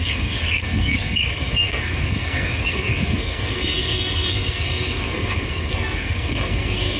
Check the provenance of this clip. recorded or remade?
remade